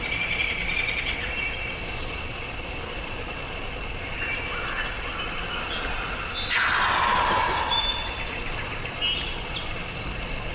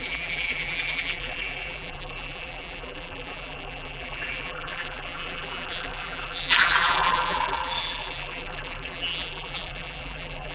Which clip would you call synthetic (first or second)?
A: second